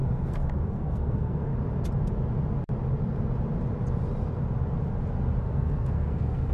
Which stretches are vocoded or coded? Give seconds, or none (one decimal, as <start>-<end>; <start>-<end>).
0.0-1.5; 5.4-6.5